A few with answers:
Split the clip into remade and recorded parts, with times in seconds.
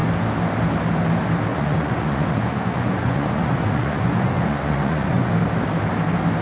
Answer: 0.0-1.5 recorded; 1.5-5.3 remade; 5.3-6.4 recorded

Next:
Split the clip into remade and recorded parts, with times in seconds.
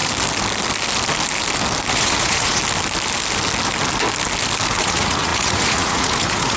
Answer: 0.0-1.9 recorded; 1.9-2.6 remade; 2.6-4.8 recorded; 4.8-6.6 remade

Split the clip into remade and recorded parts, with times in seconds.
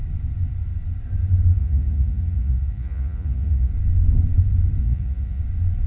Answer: 0.0-1.6 recorded; 1.6-3.7 remade; 3.7-4.8 recorded; 4.8-5.4 remade; 5.4-5.9 recorded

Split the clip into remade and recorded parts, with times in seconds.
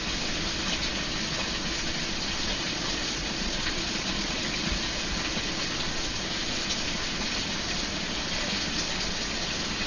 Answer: 0.0-2.5 recorded; 2.5-4.7 remade; 4.7-9.9 recorded